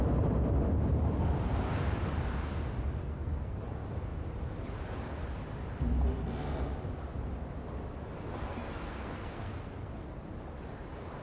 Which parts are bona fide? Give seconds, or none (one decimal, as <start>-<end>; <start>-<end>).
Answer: 0.0-3.0; 3.6-8.5; 10.1-11.2